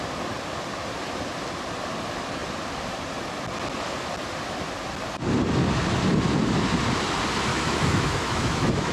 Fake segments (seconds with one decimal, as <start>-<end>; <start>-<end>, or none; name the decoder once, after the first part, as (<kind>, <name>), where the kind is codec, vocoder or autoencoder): 7.5-8.9 (autoencoder, DAC-VAE)